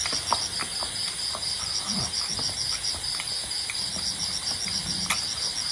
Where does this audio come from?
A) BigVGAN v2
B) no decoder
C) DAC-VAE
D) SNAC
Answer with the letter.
B